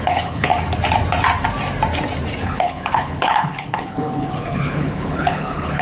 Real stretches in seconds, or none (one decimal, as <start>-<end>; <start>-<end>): 0.5-2.4